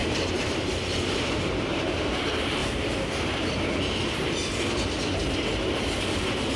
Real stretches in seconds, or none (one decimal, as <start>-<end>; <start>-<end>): 2.6-6.0